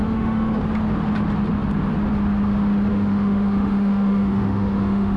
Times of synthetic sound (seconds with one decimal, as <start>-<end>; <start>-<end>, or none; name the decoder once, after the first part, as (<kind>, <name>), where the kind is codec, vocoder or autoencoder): 0.0-0.6 (autoencoder, DAC-VAE); 2.9-5.2